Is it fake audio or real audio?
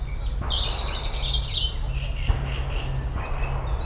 real